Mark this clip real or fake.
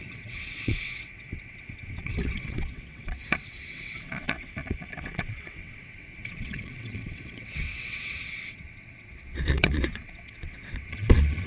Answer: fake